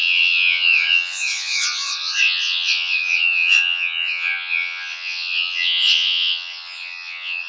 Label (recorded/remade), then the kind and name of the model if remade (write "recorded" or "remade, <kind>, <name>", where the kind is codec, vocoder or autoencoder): remade, vocoder, Vocos